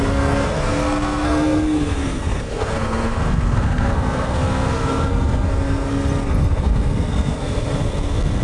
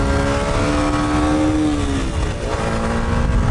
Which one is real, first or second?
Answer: second